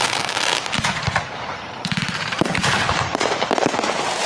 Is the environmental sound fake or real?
fake